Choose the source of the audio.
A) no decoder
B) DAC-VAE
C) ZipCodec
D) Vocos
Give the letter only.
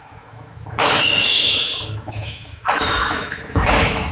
B